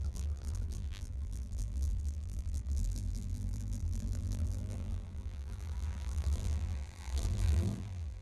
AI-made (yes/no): yes